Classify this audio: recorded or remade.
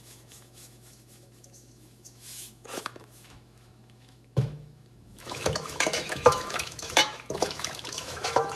remade